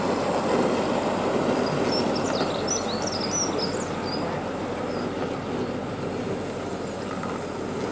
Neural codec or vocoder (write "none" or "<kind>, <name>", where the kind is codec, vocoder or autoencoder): none